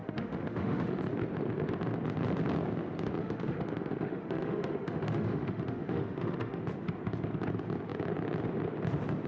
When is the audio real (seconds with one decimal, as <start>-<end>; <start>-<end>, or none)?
1.0-3.2; 6.6-9.3